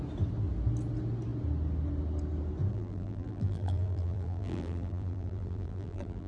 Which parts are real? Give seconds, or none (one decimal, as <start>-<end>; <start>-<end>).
0.0-2.7